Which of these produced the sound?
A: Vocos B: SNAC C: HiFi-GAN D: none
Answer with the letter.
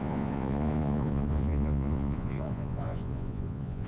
A